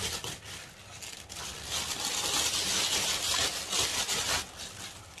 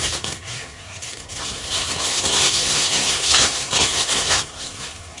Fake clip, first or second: second